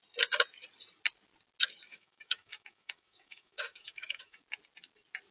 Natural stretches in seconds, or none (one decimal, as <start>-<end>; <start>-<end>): 0.0-1.9; 4.4-5.3